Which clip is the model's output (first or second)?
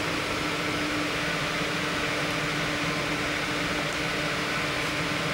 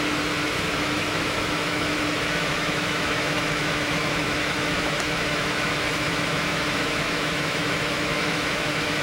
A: second